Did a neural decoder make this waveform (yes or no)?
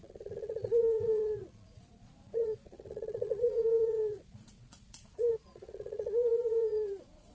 yes